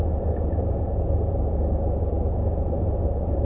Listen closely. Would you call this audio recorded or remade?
remade